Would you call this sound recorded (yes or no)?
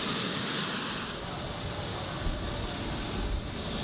yes